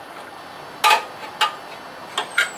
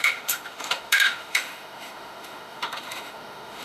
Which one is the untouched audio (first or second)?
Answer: first